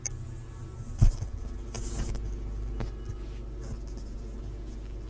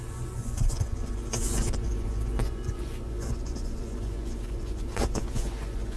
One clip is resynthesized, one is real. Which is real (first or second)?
first